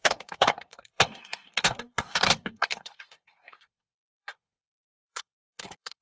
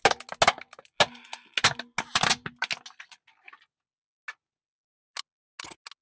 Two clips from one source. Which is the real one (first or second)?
second